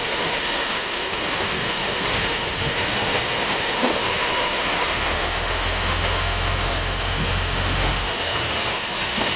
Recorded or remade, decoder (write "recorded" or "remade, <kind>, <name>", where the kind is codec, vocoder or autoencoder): remade, autoencoder, DAC-VAE